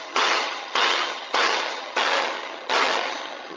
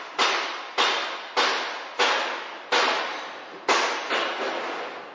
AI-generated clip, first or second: first